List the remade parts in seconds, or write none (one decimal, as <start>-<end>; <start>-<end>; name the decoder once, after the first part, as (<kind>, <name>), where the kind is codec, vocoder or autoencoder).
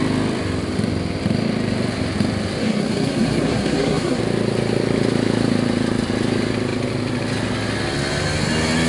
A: 2.6-4.2 (codec, SNAC)